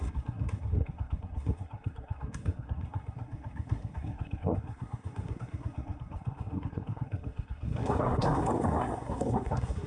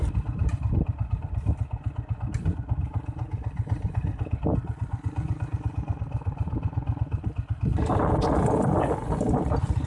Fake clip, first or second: first